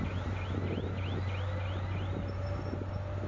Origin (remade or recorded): recorded